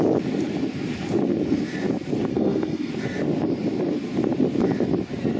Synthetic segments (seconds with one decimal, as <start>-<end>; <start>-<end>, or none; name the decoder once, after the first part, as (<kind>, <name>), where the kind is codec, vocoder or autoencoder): 2.3-2.9 (codec, SNAC)